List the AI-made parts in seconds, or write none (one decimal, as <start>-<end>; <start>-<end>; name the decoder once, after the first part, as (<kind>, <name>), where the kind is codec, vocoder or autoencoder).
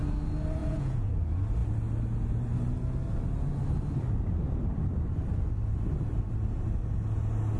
0.6-1.1 (vocoder, Vocos)